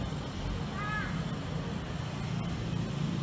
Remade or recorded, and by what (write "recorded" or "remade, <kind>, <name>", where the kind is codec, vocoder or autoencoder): recorded